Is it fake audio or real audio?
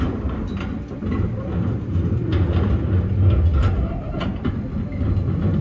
real